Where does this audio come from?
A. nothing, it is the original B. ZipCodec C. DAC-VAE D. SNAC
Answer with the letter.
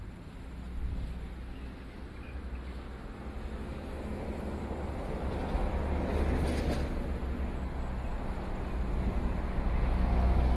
A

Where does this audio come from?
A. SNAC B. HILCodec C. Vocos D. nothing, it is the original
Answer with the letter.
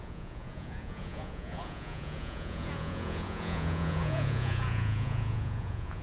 C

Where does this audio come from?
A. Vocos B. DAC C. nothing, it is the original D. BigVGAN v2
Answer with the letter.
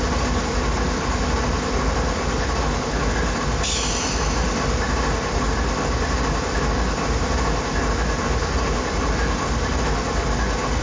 C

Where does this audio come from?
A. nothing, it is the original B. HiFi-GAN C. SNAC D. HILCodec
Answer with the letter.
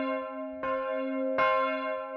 A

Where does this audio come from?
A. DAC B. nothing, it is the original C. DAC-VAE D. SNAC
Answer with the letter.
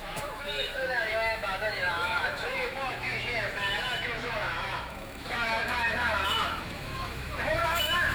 C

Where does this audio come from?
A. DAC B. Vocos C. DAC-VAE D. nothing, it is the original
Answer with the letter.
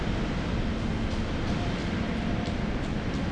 D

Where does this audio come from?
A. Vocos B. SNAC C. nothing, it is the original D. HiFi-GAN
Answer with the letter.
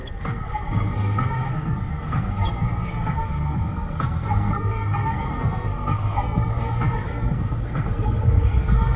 B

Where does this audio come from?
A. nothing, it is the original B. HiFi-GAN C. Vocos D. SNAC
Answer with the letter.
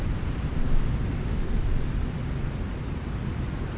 A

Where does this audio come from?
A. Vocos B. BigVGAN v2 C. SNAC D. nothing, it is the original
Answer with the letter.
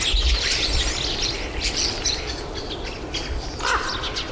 D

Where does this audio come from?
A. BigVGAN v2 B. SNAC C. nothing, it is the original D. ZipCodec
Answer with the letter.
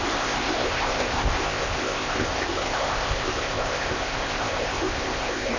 D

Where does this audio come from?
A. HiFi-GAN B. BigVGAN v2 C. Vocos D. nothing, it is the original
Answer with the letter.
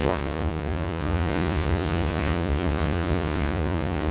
C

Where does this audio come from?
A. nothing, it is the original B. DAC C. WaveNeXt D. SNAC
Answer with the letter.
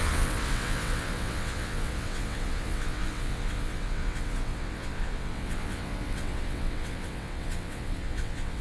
C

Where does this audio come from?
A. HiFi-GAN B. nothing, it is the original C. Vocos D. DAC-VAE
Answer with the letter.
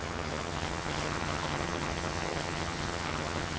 A